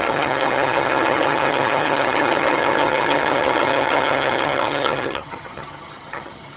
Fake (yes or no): yes